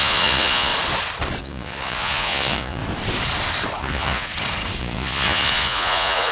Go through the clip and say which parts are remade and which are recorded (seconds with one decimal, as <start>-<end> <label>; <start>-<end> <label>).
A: 0.0-0.7 remade; 0.7-1.4 recorded; 1.4-2.8 remade; 2.8-3.8 recorded; 3.8-4.3 remade; 4.3-4.8 recorded; 4.8-6.3 remade